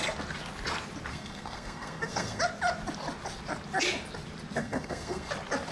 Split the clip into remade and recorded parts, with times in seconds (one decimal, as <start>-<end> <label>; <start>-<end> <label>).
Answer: 0.0-1.1 recorded; 1.1-2.4 remade; 2.4-4.6 recorded; 4.6-5.3 remade; 5.3-5.7 recorded